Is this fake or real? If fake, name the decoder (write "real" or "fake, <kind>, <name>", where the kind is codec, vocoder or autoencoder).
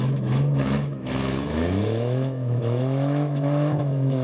fake, autoencoder, DAC-VAE